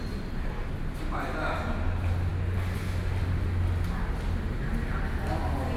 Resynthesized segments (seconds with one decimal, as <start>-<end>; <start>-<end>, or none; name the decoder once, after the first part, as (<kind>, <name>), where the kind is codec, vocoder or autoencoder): none